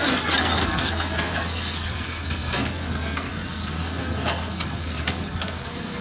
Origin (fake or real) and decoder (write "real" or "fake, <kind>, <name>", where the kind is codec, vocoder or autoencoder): fake, codec, SNAC